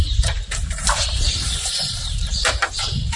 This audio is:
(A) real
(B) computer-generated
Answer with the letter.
B